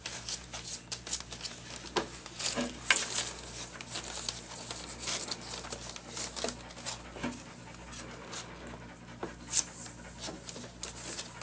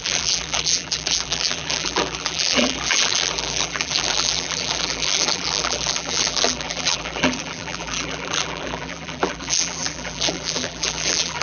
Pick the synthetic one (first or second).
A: second